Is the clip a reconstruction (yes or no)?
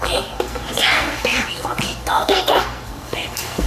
yes